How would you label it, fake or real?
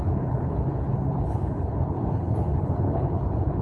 fake